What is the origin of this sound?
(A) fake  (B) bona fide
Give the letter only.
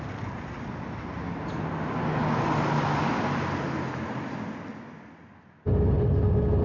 B